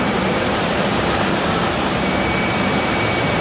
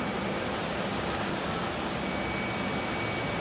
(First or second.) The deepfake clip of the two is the first